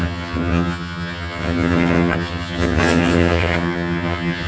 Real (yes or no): no